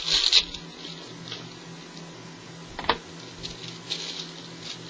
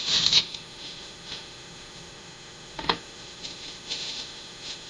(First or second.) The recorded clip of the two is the first